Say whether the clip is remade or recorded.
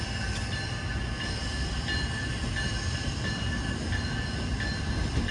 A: recorded